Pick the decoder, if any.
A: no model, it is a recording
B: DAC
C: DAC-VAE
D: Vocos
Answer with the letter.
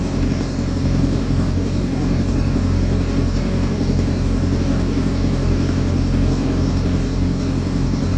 B